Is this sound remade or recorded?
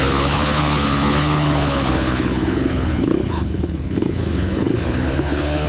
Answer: remade